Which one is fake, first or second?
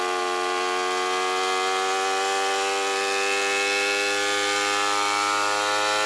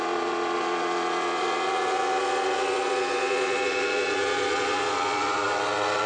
second